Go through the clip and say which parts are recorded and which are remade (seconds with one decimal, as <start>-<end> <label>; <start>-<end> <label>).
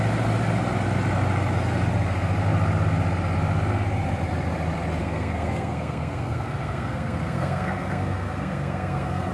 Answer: 0.0-5.0 recorded; 5.0-9.3 remade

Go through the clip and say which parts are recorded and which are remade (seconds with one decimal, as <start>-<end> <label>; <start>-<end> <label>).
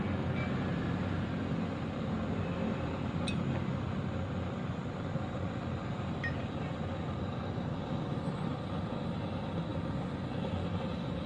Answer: 0.0-11.3 recorded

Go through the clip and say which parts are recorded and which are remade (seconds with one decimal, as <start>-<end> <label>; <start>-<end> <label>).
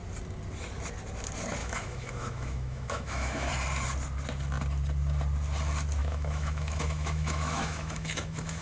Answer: 0.0-1.6 recorded; 1.6-3.5 remade; 3.5-6.0 recorded; 6.0-8.6 remade